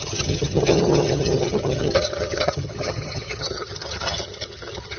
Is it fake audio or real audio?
fake